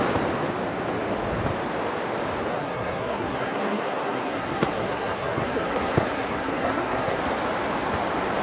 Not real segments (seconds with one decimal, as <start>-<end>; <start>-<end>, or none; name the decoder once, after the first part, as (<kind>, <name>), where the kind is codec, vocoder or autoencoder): 2.5-7.2 (codec, SNAC)